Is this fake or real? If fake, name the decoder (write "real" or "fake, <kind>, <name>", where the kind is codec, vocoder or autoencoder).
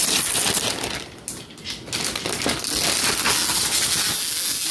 real